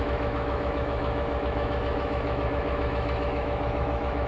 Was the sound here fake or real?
fake